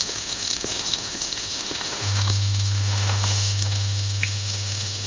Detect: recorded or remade remade